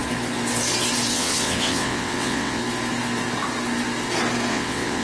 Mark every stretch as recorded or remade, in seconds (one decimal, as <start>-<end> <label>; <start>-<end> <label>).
0.0-1.1 recorded; 1.1-2.6 remade; 2.6-4.5 recorded; 4.5-5.0 remade